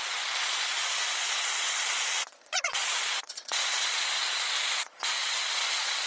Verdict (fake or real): fake